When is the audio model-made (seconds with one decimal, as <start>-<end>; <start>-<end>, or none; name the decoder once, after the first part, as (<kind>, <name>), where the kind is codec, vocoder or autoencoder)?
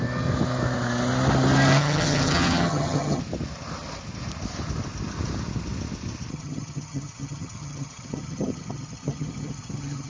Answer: 1.8-3.2 (vocoder, HiFi-GAN); 6.3-10.1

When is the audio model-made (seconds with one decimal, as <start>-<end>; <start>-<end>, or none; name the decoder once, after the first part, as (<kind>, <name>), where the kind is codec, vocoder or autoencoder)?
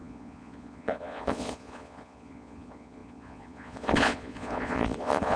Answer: 0.0-5.4 (vocoder, Vocos)